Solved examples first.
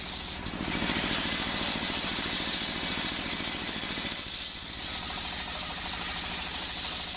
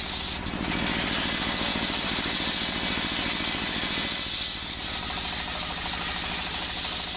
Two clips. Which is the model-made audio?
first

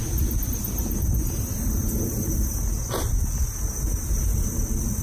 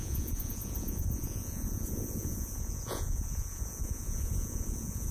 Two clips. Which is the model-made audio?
second